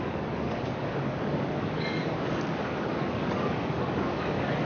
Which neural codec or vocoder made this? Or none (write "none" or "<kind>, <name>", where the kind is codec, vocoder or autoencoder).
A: codec, DAC